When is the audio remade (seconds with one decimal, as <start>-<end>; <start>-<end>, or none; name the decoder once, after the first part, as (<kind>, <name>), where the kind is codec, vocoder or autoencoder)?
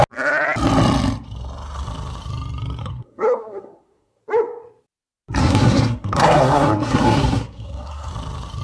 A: 2.8-4.2 (codec, SNAC); 5.4-8.1